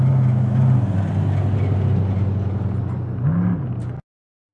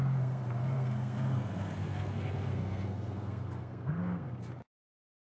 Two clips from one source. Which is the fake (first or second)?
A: second